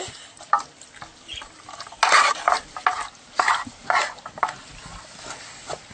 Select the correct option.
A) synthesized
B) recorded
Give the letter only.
B